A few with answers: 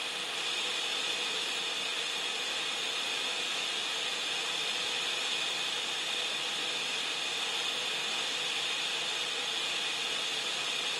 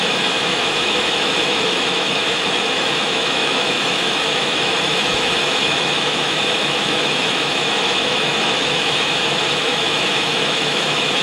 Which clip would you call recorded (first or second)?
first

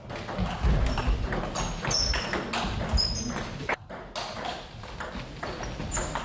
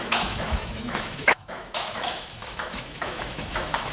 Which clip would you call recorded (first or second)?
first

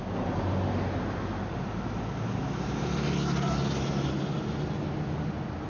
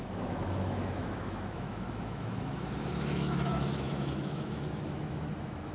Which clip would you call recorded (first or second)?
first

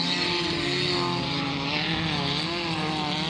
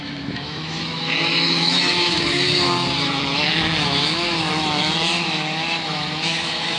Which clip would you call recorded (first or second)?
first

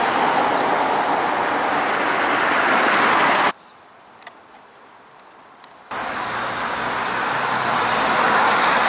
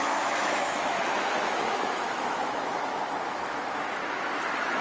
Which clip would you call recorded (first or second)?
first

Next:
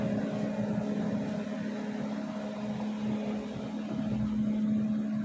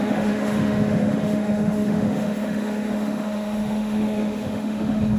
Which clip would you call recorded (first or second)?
first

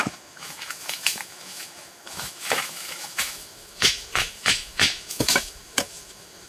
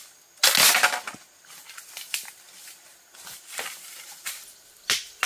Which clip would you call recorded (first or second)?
second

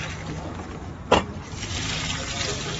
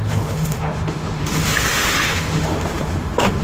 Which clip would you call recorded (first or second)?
first